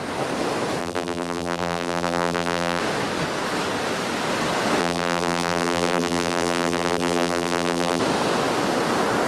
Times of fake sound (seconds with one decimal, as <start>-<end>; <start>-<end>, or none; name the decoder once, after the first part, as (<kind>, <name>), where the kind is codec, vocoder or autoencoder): 0.8-2.8 (vocoder, BigVGAN v2); 4.8-8.0